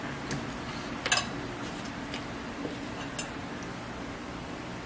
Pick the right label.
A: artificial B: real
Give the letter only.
B